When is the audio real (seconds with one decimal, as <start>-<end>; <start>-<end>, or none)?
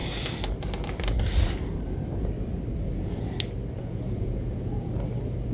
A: 0.0-3.8; 4.9-5.5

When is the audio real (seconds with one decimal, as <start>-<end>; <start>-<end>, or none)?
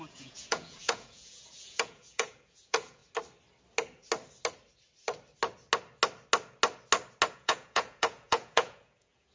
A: 3.0-7.3